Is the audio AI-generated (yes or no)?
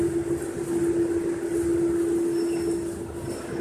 no